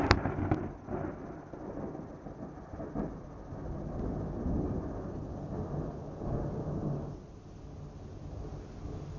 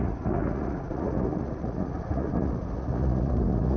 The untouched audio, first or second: first